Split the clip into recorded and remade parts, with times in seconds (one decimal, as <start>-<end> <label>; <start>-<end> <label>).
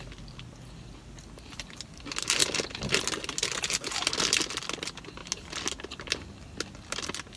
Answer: 0.0-7.4 recorded